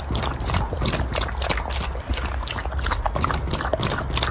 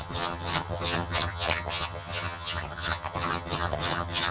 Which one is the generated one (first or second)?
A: second